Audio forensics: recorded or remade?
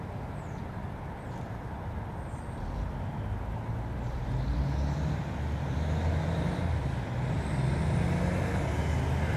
recorded